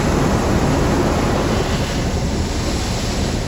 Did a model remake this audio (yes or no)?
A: no